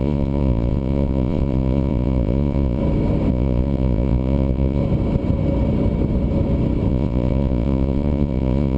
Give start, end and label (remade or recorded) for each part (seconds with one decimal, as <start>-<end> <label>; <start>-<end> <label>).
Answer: 0.0-2.8 remade; 2.8-3.3 recorded; 3.3-4.8 remade; 4.8-6.9 recorded; 6.9-8.8 remade